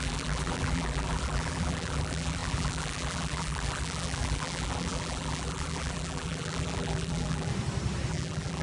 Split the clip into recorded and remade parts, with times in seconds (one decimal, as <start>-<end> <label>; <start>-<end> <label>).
0.0-7.5 remade; 7.5-8.1 recorded; 8.1-8.6 remade